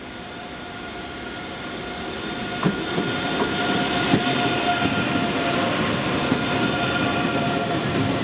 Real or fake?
real